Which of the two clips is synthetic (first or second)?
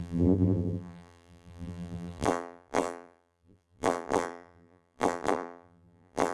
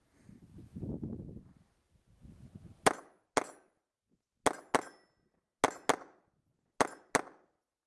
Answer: first